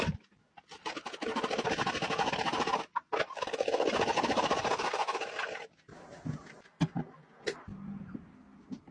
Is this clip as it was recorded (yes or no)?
yes